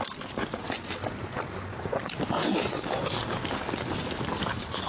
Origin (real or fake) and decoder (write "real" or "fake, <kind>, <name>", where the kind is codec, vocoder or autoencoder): real